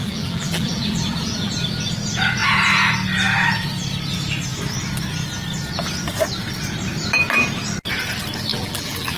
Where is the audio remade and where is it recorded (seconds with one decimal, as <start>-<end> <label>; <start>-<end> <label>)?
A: 0.0-1.5 remade; 1.5-8.5 recorded; 8.5-9.2 remade